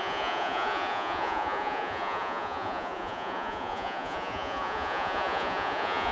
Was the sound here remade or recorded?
remade